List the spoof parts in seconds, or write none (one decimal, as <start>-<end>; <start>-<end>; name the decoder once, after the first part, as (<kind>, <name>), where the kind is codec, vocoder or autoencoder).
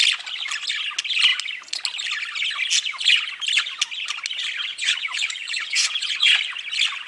4.7-6.4 (vocoder, Vocos)